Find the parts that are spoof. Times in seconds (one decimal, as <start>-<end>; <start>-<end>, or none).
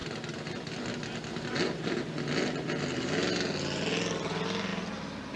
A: none